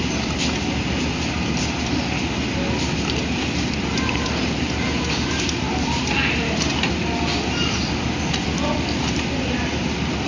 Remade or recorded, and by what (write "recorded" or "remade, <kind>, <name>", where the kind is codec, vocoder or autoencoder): recorded